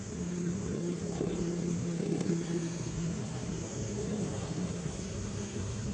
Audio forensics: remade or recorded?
remade